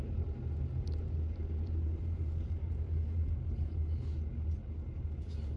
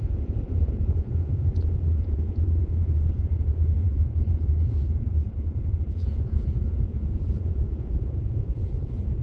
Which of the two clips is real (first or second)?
first